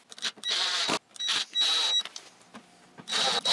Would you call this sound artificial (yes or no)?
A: no